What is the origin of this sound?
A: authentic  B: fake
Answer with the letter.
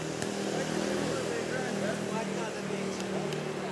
A